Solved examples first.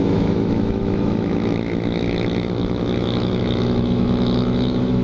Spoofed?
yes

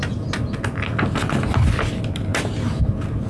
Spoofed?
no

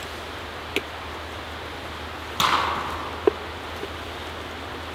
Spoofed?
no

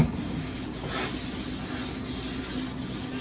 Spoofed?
no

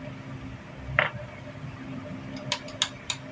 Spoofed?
no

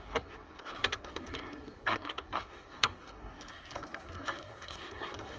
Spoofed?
yes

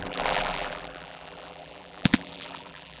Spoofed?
yes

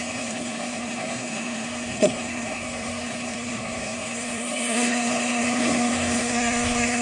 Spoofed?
yes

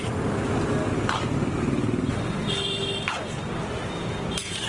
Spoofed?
no